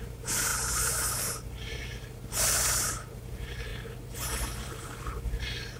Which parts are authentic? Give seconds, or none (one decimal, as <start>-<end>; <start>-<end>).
3.7-4.2